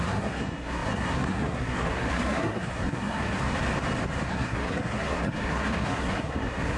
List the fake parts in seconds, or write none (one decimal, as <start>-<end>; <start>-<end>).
0.0-3.4; 4.3-6.8